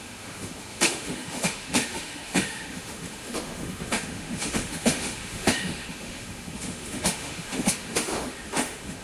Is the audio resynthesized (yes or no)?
yes